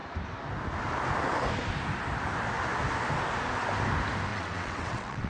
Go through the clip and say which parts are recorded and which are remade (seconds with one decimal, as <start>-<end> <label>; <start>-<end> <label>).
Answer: 0.0-4.3 recorded; 4.3-5.3 remade

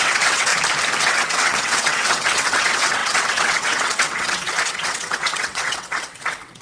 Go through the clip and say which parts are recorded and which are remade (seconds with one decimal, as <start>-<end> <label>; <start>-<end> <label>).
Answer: 0.0-0.5 remade; 0.5-1.0 recorded; 1.0-6.6 remade

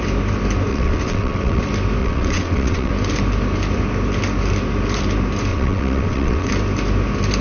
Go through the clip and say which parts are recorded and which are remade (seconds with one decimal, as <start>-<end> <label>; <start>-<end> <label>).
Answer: 0.0-0.7 recorded; 0.7-1.6 remade; 1.6-2.0 recorded; 2.0-2.9 remade; 2.9-5.5 recorded; 5.5-6.5 remade; 6.5-7.4 recorded

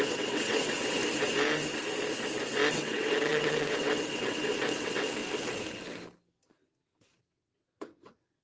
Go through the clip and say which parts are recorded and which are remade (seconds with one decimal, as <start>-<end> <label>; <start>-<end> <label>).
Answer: 0.0-1.0 remade; 1.0-2.7 recorded; 2.7-5.2 remade; 5.2-7.2 recorded; 7.2-8.4 remade

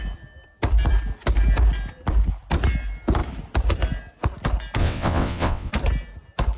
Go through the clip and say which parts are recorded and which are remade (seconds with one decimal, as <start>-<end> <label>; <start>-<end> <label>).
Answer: 0.0-4.8 recorded; 4.8-5.7 remade; 5.7-6.6 recorded